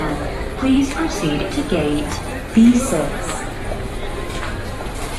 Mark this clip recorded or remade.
remade